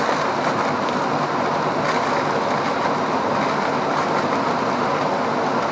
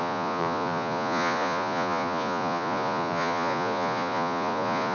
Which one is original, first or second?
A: first